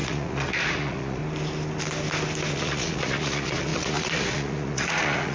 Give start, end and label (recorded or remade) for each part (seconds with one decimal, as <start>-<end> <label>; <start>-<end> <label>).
0.0-1.2 remade; 1.2-2.5 recorded; 2.5-5.3 remade